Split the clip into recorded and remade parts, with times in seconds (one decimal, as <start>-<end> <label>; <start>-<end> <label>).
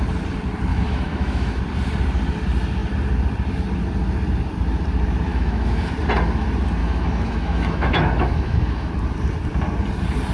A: 0.0-0.7 recorded; 0.7-1.6 remade; 1.6-5.3 recorded; 5.3-5.9 remade; 5.9-6.8 recorded; 6.8-8.9 remade; 8.9-10.3 recorded